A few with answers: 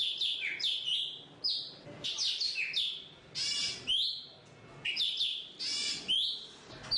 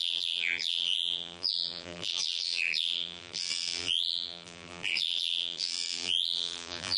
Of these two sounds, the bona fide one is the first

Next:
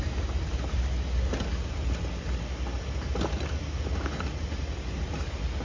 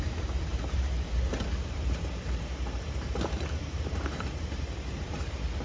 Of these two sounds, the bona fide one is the first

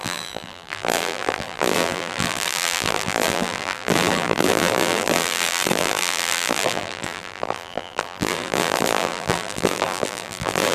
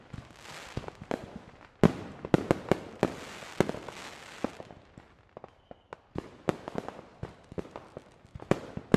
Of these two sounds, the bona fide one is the second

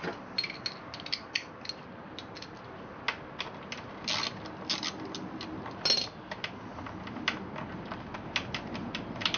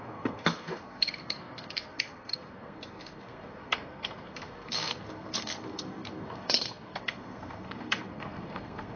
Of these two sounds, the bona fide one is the first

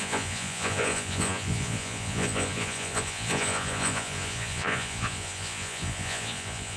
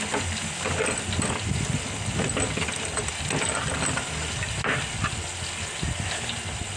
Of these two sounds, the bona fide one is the second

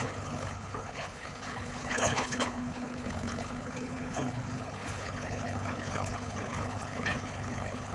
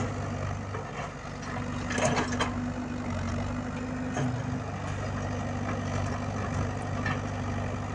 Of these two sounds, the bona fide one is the second